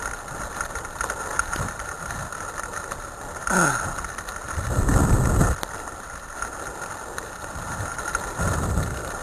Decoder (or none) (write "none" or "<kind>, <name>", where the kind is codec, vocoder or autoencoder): none